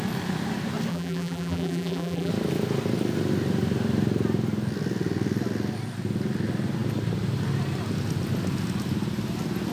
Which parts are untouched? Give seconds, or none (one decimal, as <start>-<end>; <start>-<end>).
0.0-0.9; 2.3-9.7